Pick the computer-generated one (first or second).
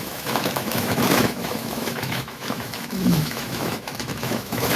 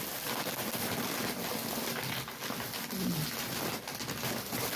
first